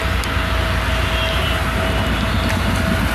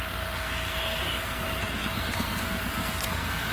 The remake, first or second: second